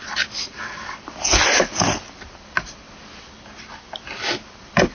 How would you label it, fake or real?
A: real